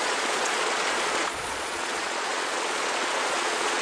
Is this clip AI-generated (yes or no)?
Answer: yes